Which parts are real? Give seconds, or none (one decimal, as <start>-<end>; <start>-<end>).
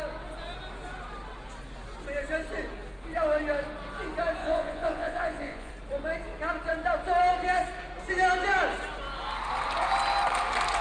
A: 0.0-4.4; 5.7-10.8